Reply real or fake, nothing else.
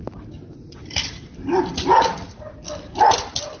real